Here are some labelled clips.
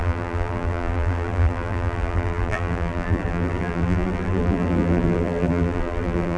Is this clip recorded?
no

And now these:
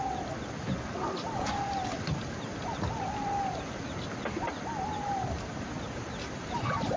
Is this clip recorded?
yes